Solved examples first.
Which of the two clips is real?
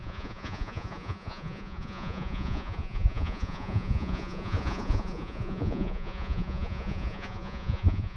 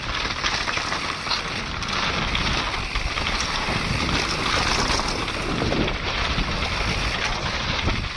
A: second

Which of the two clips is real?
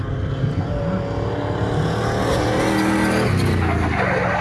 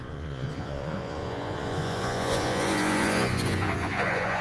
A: first